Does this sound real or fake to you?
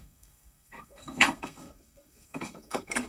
fake